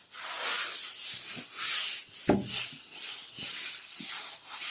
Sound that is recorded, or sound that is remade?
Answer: recorded